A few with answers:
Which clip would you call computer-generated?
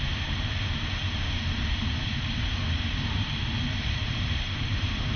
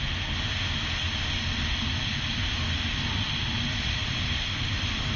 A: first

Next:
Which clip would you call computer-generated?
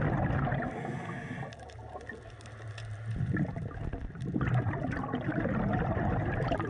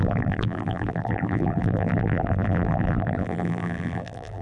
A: second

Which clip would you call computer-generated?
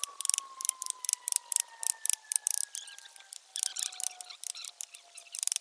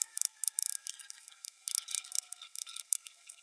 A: second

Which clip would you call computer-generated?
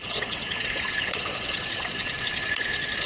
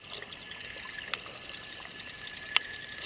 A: first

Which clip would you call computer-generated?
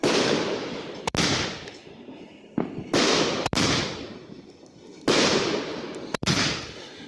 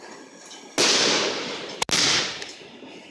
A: first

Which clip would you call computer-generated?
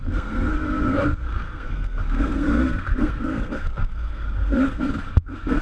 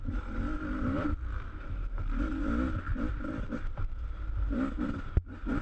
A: first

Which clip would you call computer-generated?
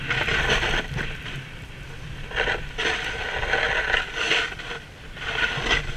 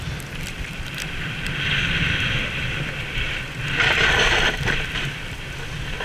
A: second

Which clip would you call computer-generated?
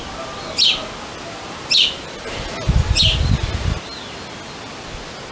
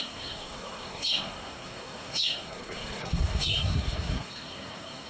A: second